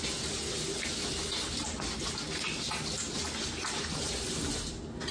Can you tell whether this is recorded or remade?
recorded